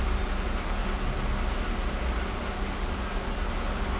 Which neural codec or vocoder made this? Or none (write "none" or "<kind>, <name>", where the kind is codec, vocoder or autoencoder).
none